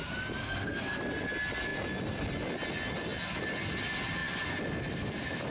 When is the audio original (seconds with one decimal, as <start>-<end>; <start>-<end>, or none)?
0.0-0.4; 1.0-5.5

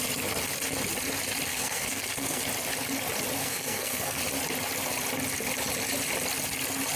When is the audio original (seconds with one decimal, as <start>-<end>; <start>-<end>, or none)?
0.0-1.5; 2.4-3.4; 4.2-7.0